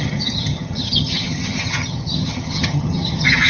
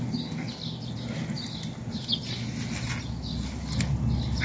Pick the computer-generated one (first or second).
first